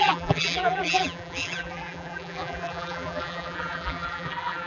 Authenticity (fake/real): fake